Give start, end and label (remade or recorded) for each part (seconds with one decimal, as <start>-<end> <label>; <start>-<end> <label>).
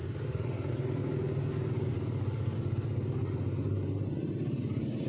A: 0.0-1.0 remade; 1.0-4.1 recorded; 4.1-5.1 remade